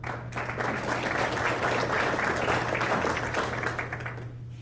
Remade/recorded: recorded